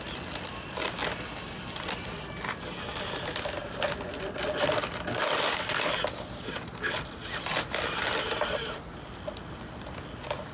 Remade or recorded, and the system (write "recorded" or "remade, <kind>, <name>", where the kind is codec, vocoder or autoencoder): recorded